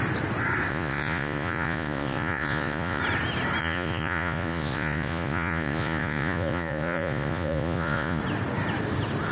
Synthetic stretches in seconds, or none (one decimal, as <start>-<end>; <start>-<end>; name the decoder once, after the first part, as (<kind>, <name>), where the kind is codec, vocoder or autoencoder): 0.7-3.0 (vocoder, Vocos); 3.6-8.2